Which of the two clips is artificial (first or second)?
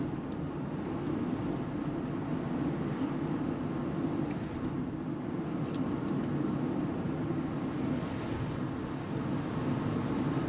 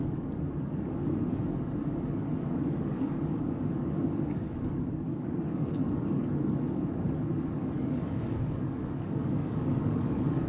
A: second